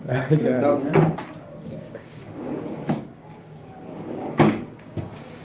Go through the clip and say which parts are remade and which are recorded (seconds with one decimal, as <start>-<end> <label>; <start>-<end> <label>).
0.0-0.5 remade; 0.5-1.4 recorded; 1.4-5.4 remade